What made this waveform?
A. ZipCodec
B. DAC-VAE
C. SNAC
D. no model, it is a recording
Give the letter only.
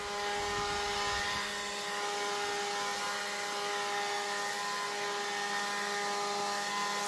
D